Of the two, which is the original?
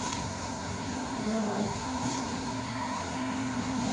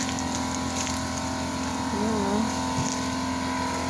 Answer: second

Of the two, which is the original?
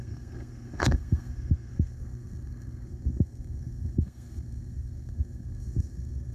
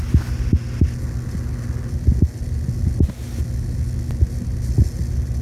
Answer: second